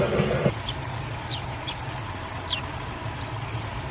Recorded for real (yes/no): yes